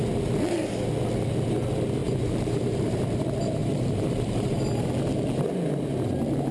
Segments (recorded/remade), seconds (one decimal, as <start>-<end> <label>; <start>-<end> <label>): 0.0-2.0 recorded; 2.0-3.0 remade; 3.0-3.6 recorded; 3.6-4.6 remade; 4.6-6.5 recorded